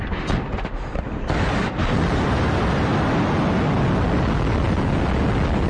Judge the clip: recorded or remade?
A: recorded